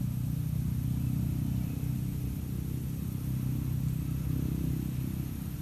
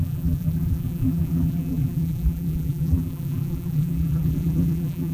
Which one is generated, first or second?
second